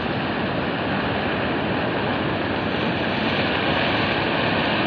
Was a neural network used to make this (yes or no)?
no